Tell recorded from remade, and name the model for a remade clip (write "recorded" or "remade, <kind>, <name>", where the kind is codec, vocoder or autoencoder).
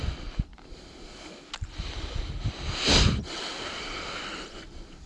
recorded